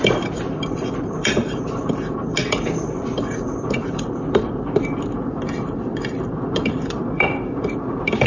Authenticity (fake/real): fake